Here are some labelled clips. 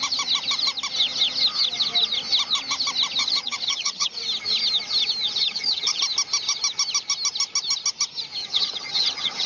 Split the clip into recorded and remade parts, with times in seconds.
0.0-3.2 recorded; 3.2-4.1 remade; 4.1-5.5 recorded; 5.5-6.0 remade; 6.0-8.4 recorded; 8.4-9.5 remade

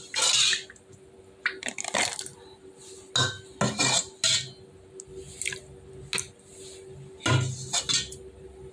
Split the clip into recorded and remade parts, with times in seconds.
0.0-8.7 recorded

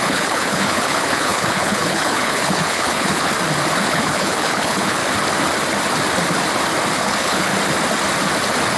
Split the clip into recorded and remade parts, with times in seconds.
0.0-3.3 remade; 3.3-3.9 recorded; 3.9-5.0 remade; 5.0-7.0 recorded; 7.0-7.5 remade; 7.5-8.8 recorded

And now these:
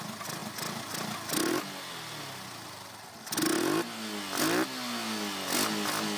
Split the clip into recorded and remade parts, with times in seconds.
0.0-6.2 recorded

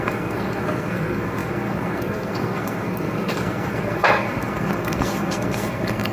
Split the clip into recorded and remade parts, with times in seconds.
0.0-6.1 remade